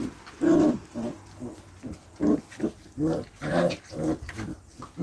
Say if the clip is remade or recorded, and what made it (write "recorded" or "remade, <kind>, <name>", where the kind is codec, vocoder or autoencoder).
recorded